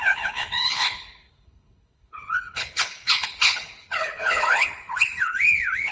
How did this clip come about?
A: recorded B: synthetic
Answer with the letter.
B